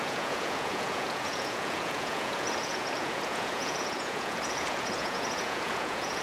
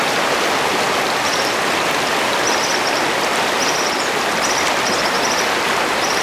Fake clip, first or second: first